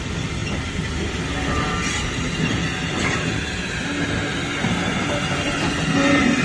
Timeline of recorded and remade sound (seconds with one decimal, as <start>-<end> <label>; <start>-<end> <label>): 0.0-6.4 recorded